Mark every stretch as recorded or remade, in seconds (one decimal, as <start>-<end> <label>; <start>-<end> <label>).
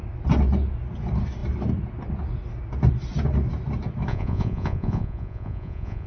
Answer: 0.0-4.1 recorded; 4.1-6.1 remade